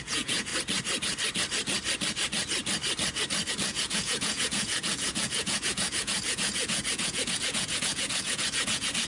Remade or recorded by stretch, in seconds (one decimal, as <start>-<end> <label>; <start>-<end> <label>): 0.0-0.5 remade; 0.5-3.5 recorded; 3.5-9.1 remade